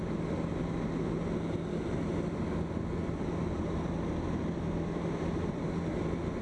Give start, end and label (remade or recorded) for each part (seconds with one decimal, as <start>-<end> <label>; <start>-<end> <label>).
0.0-6.4 recorded